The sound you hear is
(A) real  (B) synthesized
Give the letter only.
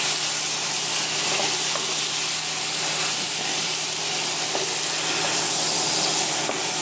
A